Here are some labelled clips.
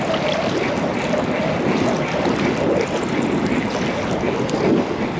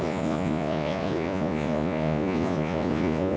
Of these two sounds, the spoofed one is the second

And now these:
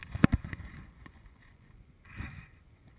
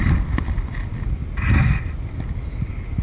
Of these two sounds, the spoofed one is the first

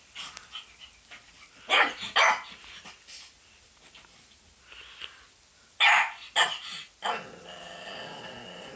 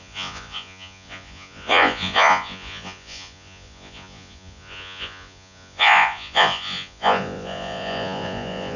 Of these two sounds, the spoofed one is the second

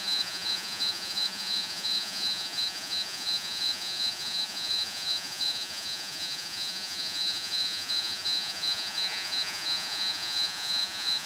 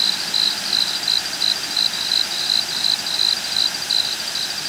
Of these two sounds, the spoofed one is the first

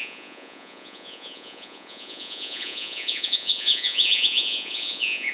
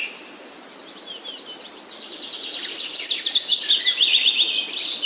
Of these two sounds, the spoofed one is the first